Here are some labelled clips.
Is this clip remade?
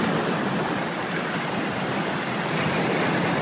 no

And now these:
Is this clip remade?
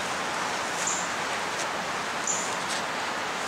no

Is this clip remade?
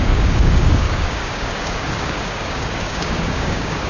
yes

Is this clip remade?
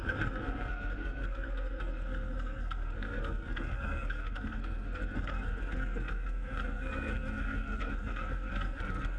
yes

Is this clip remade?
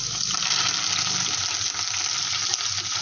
no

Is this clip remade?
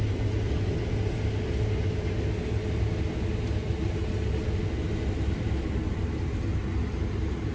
no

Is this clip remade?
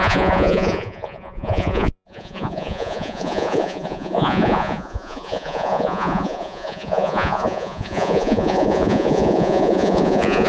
yes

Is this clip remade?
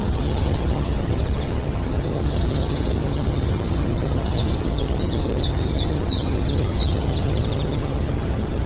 yes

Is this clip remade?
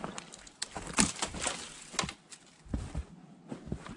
no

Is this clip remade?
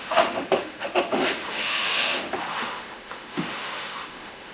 yes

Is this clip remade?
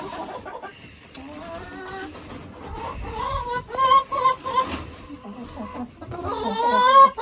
no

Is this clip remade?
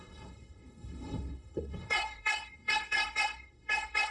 yes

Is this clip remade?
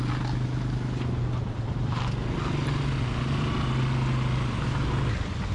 no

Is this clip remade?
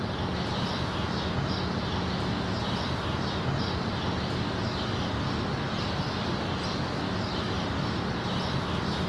no